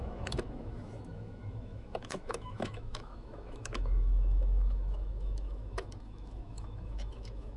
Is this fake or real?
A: fake